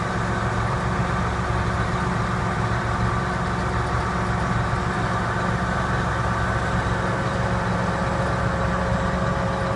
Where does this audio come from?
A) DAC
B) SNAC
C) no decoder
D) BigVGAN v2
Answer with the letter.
C